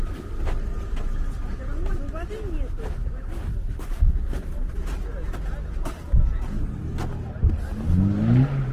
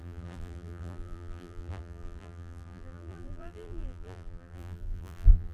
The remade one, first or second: second